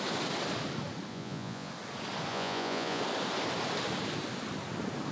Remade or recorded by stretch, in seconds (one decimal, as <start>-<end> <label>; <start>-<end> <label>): 0.0-1.1 recorded; 1.1-1.7 remade; 1.7-2.3 recorded; 2.3-3.0 remade; 3.0-5.1 recorded

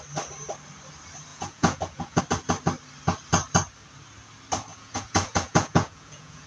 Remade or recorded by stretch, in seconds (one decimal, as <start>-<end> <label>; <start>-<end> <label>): 0.0-1.3 recorded; 1.3-2.2 remade; 2.2-4.7 recorded; 4.7-6.5 remade

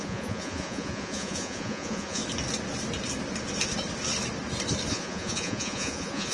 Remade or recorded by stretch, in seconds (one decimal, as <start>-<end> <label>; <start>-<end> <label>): 0.0-2.2 remade; 2.2-4.9 recorded; 4.9-6.3 remade